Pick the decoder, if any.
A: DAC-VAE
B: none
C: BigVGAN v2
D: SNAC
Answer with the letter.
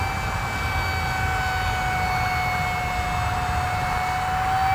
B